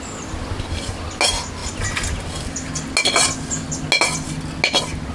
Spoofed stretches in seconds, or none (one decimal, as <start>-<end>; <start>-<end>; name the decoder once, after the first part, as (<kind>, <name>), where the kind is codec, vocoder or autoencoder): none